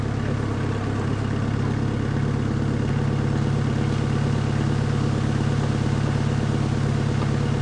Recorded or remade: recorded